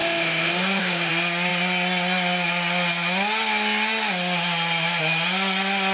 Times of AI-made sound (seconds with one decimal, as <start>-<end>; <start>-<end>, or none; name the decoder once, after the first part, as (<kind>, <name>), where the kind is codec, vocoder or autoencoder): 0.0-1.1 (autoencoder, DAC-VAE)